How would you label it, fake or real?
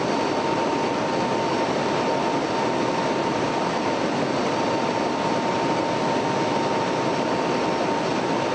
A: real